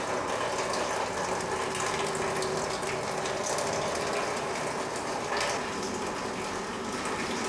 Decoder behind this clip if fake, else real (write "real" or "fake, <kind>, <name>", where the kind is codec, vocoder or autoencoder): real